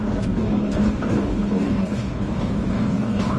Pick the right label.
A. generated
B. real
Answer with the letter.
A